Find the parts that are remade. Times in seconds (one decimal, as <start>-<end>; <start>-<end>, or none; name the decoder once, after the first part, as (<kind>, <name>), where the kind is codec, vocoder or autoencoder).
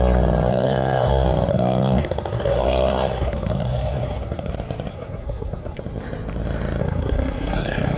0.5-1.1 (codec, SNAC); 1.5-4.5; 4.9-5.8; 6.8-8.0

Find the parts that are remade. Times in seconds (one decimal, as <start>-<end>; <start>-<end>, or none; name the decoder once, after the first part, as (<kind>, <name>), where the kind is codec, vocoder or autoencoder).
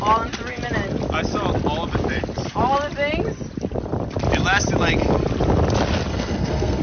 6.1-6.8 (codec, SNAC)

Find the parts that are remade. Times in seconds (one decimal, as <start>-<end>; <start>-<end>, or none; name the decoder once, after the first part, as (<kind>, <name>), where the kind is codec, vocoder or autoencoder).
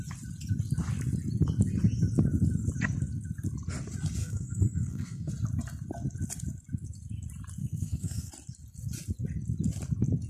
4.2-5.3 (codec, SNAC); 7.6-8.3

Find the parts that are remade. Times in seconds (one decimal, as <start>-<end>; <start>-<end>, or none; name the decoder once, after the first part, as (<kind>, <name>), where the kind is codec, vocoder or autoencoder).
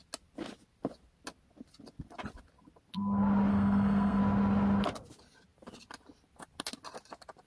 3.5-4.2 (codec, SNAC)